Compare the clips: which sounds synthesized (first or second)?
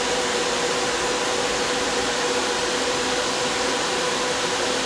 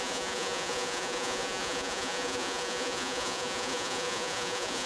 second